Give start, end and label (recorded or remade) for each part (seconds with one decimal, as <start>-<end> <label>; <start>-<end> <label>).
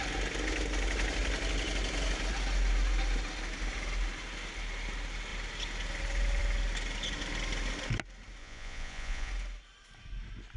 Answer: 0.0-8.4 recorded; 8.4-9.3 remade; 9.3-10.6 recorded